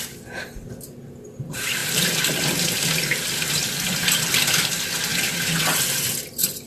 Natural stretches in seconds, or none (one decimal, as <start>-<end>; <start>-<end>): 0.0-1.8; 4.6-5.1; 5.6-6.7